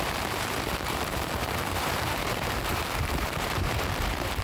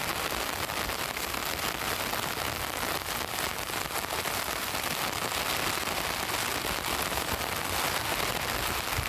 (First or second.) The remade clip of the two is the first